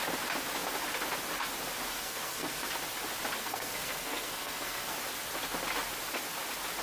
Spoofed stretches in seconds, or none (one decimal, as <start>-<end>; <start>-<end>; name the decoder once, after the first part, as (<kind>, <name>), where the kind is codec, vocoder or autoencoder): 1.9-2.7 (codec, SNAC); 3.4-5.0